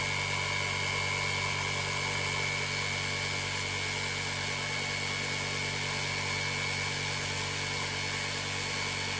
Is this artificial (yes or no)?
no